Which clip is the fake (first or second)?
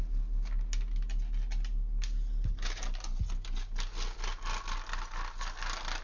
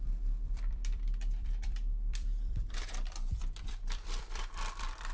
second